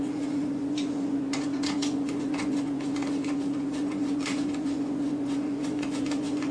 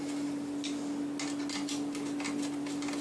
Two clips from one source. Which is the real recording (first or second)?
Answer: second